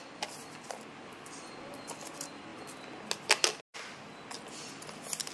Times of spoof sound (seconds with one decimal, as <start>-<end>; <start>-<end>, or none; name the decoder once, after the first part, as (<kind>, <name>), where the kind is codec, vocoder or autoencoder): none